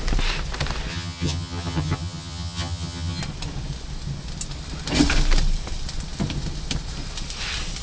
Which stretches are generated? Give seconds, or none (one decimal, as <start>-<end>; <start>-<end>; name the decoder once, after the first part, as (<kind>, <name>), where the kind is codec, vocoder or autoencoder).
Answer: 0.9-3.2 (vocoder, HiFi-GAN)